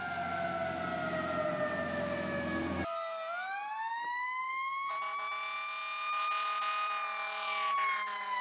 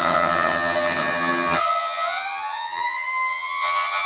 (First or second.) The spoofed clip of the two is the second